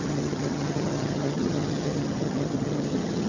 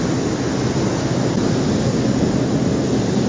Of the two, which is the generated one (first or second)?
first